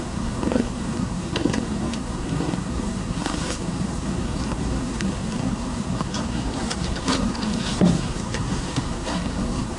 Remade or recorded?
remade